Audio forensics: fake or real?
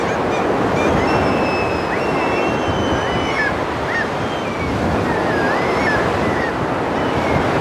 real